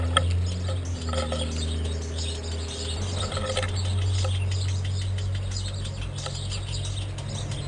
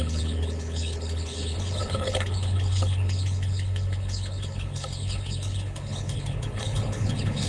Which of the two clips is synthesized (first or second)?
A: second